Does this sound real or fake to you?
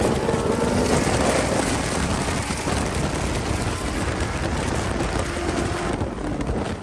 real